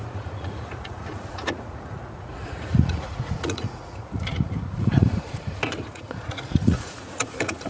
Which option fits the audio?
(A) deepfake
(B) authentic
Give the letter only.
A